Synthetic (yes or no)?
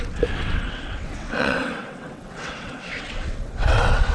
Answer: yes